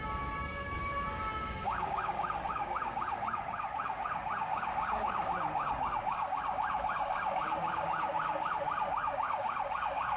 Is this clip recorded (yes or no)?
no